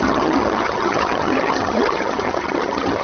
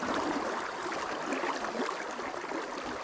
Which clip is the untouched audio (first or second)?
second